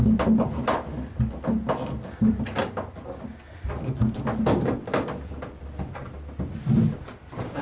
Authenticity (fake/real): real